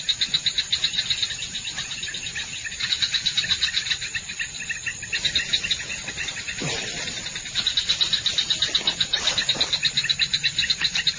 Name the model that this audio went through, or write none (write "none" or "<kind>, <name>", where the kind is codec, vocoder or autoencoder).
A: none